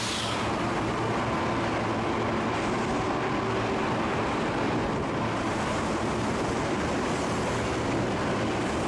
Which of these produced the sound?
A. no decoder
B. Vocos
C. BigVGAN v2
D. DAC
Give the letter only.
A